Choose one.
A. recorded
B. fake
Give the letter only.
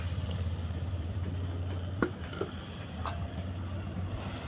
B